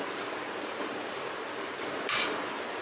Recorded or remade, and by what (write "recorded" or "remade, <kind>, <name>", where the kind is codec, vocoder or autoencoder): recorded